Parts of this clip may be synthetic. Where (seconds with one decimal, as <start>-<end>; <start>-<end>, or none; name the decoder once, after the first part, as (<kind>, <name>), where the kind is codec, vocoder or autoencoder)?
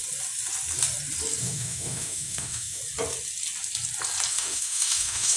1.4-2.8 (autoencoder, DAC-VAE); 4.3-5.4